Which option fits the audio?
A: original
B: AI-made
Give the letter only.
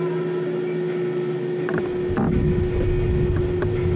A